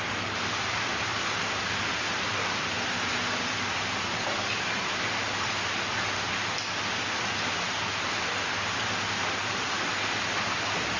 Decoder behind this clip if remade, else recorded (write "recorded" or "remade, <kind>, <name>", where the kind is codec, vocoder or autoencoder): recorded